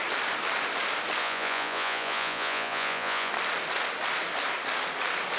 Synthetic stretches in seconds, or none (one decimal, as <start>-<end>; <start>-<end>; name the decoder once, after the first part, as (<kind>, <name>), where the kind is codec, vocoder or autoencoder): 1.2-3.3 (vocoder, Vocos)